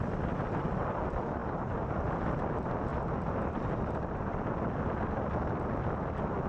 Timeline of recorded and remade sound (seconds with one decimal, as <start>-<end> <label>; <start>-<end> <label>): 0.0-2.9 recorded; 2.9-4.8 remade; 4.8-6.5 recorded